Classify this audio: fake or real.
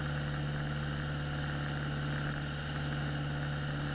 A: real